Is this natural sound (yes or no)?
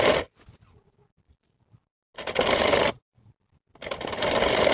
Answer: yes